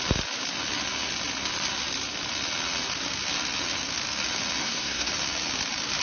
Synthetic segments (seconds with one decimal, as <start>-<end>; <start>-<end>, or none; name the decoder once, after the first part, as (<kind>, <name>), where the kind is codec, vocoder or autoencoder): 4.6-5.1 (codec, SNAC)